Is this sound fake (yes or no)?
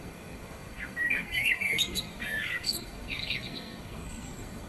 yes